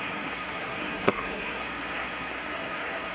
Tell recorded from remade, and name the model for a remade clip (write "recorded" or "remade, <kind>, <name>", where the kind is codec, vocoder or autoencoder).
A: remade, codec, SNAC